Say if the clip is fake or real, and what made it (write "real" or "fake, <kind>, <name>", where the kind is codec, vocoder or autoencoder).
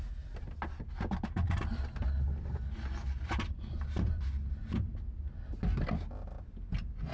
real